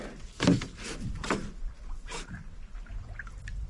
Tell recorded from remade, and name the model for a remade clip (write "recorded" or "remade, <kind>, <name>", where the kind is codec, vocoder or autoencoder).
recorded